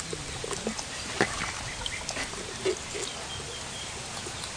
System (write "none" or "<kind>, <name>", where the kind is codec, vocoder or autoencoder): none